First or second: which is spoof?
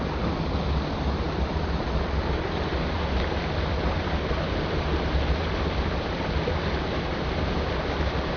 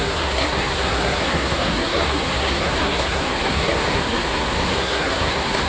second